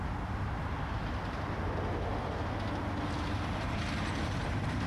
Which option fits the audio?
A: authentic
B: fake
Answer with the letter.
A